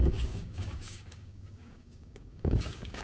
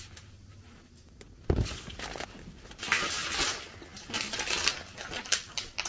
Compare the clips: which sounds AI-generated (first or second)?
first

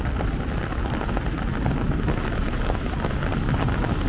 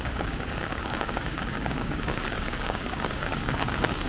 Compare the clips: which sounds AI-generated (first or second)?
second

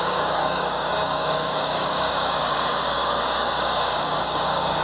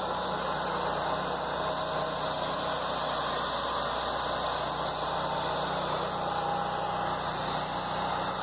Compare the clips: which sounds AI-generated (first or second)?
first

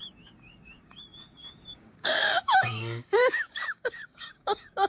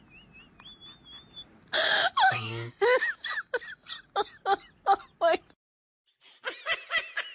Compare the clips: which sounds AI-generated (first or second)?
first